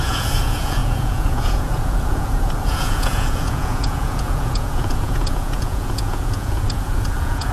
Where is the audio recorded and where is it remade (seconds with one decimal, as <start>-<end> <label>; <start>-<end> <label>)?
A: 0.0-7.5 remade